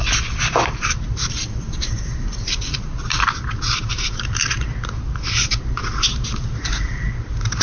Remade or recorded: remade